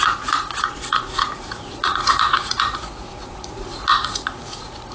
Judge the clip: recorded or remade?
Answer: remade